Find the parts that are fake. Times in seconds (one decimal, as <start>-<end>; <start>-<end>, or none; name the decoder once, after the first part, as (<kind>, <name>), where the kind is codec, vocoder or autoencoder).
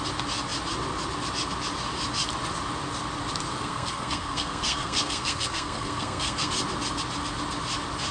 3.5-6.5 (codec, SNAC)